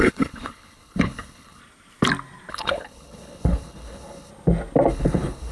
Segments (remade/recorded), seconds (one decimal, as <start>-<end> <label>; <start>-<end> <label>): 0.0-1.6 remade; 1.6-2.5 recorded; 2.5-4.3 remade; 4.3-4.9 recorded; 4.9-5.5 remade